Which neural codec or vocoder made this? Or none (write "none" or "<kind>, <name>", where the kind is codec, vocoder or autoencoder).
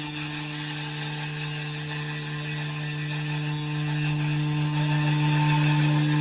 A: none